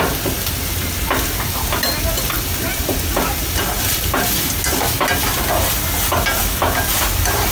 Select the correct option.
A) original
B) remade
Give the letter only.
A